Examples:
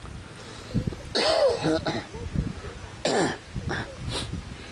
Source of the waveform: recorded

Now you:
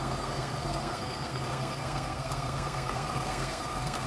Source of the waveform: remade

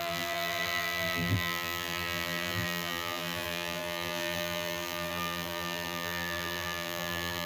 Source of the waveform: remade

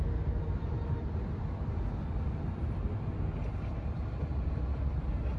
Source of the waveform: recorded